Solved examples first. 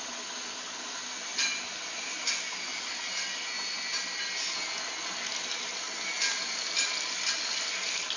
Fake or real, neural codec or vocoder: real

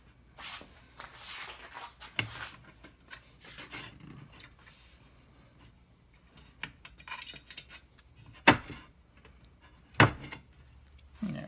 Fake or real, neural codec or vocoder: real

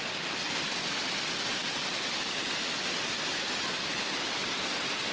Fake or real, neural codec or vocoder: real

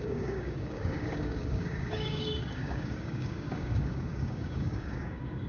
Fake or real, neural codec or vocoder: fake, codec, DAC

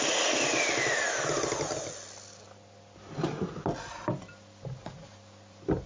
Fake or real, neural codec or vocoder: real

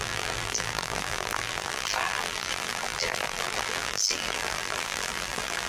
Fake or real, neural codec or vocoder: fake, vocoder, BigVGAN v2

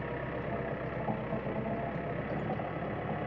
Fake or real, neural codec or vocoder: real